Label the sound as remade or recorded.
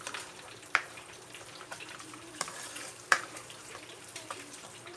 remade